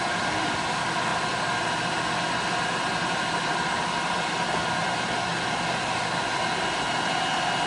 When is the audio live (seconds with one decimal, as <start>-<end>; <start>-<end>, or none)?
0.0-7.7